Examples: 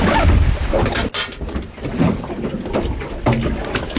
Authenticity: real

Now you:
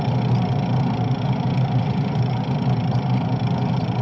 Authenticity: real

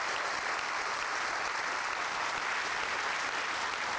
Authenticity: real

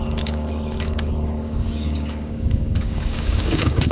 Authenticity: fake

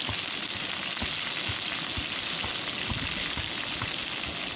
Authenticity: real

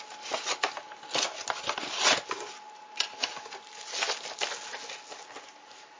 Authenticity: real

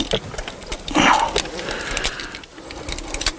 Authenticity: real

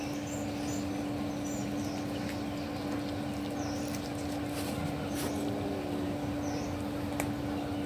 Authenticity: real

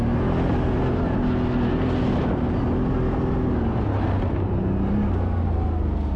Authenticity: real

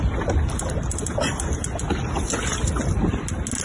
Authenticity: real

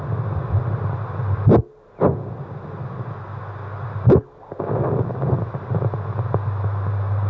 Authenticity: real